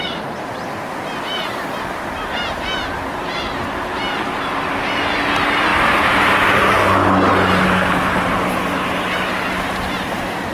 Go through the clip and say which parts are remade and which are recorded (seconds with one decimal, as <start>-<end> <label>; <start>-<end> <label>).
0.0-10.5 recorded